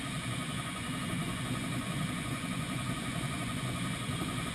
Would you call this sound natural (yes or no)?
no